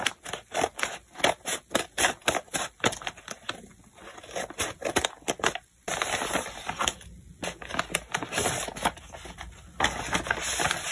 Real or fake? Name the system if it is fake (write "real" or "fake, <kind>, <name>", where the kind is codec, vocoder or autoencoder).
real